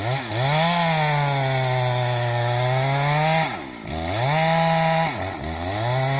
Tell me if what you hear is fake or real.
real